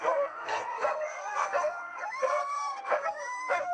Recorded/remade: remade